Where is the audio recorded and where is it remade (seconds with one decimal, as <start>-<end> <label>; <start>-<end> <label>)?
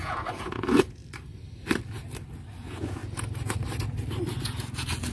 0.0-1.0 remade; 1.0-2.5 recorded; 2.5-3.0 remade; 3.0-4.4 recorded; 4.4-5.1 remade